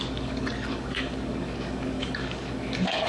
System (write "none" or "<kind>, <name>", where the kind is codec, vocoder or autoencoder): codec, DAC